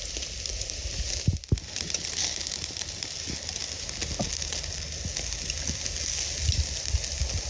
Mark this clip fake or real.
real